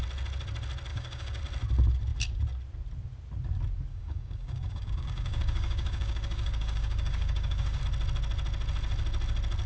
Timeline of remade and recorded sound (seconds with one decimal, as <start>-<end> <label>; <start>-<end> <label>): 0.0-0.9 recorded; 0.9-1.4 remade; 1.4-3.9 recorded; 3.9-7.8 remade; 7.8-9.7 recorded